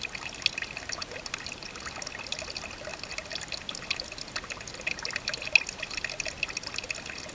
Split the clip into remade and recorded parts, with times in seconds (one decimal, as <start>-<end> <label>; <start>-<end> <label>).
0.0-7.3 recorded